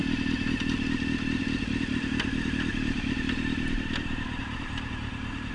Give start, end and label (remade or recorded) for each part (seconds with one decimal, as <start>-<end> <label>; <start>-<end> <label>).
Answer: 0.0-2.7 recorded; 2.7-5.5 remade